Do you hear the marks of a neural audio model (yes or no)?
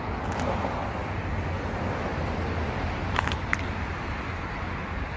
no